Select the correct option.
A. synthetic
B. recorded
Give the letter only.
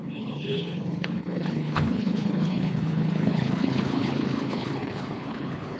A